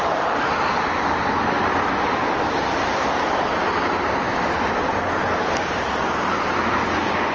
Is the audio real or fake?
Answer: real